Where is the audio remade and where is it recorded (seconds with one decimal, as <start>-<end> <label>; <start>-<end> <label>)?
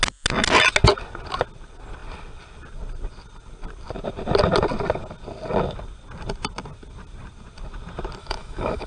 0.0-8.2 recorded; 8.2-8.9 remade